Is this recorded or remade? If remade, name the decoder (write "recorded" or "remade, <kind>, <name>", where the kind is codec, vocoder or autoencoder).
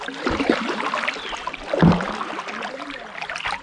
recorded